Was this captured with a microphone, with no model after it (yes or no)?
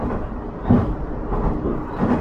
yes